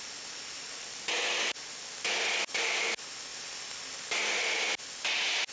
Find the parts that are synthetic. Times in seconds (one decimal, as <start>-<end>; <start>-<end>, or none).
none